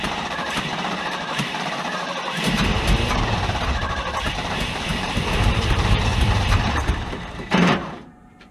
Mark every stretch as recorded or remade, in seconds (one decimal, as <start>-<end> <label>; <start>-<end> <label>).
0.0-8.5 remade